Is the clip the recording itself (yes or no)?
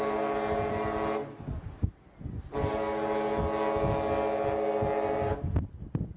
yes